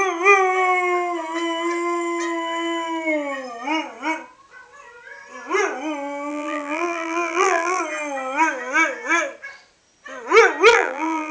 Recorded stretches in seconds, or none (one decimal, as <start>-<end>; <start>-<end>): 0.0-6.3; 7.8-10.7